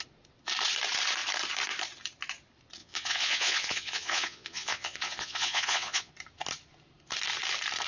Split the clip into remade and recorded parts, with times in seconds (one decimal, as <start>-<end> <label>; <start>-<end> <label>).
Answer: 0.0-2.8 recorded; 2.8-6.1 remade; 6.1-7.9 recorded